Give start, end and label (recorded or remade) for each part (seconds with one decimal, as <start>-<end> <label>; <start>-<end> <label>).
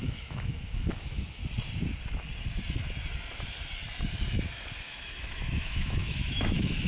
0.0-1.4 remade; 1.4-4.8 recorded; 4.8-6.9 remade